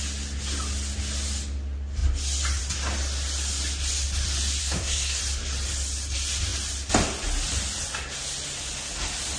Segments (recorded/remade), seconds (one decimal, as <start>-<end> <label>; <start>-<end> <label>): 0.0-4.6 recorded; 4.6-5.2 remade; 5.2-9.4 recorded